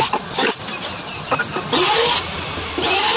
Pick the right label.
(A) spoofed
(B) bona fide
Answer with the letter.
B